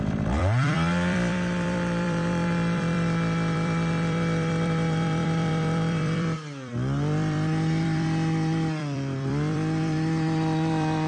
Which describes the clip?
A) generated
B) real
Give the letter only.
A